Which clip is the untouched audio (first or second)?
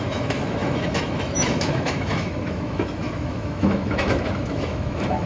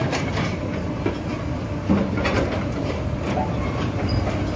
second